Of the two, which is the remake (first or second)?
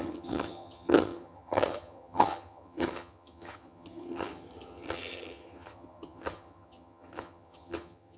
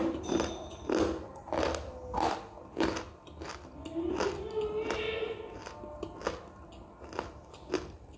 first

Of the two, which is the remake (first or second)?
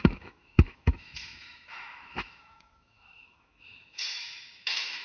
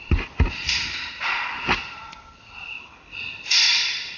first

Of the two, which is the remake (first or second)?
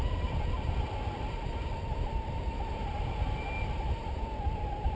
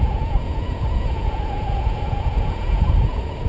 second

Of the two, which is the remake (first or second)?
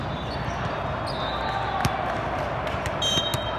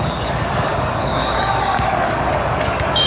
second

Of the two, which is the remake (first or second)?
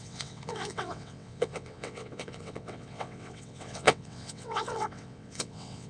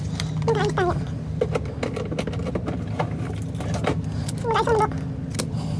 first